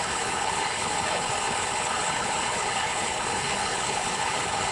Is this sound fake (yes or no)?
yes